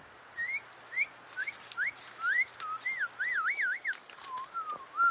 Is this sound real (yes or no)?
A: no